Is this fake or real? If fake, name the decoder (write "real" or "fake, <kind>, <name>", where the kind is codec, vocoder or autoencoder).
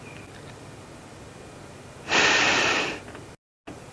real